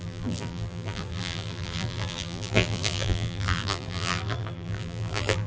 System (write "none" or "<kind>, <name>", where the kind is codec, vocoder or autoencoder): vocoder, BigVGAN v2